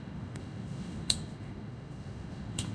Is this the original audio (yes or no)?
no